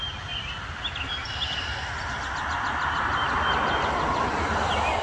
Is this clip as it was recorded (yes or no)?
yes